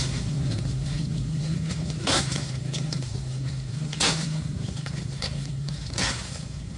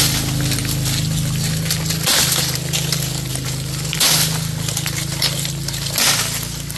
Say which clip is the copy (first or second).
first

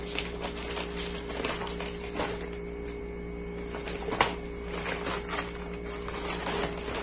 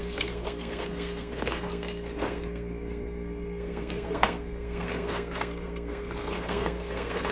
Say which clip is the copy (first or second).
second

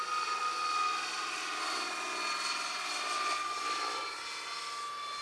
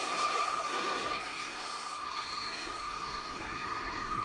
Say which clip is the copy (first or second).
second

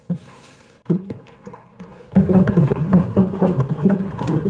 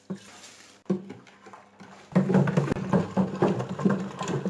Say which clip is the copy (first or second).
first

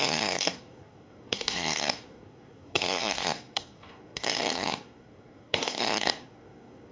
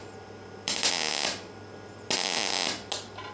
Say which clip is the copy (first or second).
first